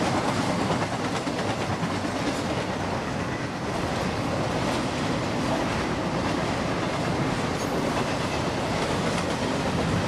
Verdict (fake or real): real